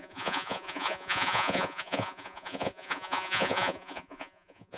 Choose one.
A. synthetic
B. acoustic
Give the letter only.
A